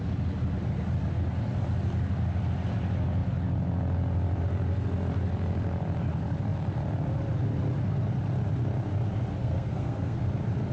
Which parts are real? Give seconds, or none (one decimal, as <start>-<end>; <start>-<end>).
0.0-9.3; 10.2-10.7